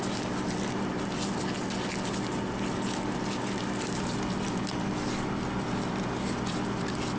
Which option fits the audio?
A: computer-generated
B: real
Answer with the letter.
B